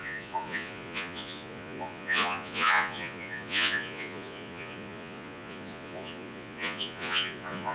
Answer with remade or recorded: remade